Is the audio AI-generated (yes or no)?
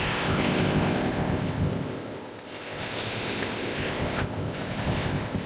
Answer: yes